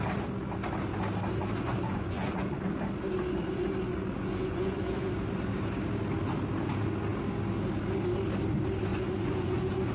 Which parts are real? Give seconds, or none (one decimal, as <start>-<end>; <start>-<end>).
0.0-1.4; 2.6-3.9; 5.1-8.9